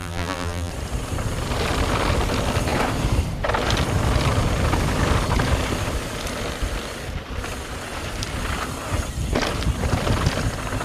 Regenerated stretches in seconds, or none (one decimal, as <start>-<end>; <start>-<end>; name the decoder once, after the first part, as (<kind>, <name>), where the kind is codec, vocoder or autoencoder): 0.0-0.7 (vocoder, BigVGAN v2)